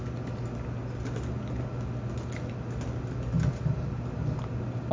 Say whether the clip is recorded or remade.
recorded